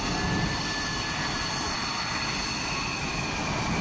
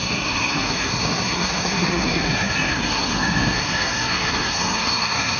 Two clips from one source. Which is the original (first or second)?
first